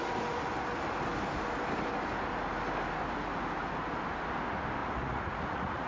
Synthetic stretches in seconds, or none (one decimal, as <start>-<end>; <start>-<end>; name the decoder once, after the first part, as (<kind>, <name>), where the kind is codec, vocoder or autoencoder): 4.8-5.9 (vocoder, Vocos)